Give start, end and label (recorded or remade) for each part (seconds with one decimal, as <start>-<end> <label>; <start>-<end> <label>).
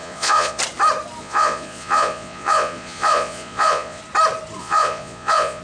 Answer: 0.0-0.6 remade; 0.6-1.2 recorded; 1.2-4.0 remade; 4.0-4.6 recorded; 4.6-5.6 remade